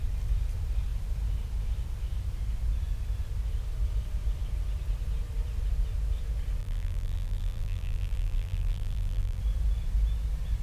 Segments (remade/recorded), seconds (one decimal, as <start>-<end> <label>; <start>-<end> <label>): 0.0-6.6 recorded; 6.6-9.4 remade; 9.4-10.6 recorded